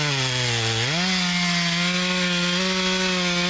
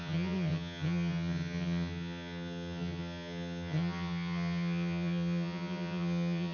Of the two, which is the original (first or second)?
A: first